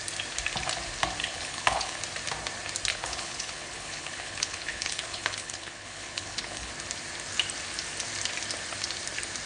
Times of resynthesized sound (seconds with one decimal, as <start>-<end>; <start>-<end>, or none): 1.2-2.0; 2.9-6.7